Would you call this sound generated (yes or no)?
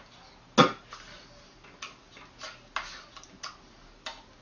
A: no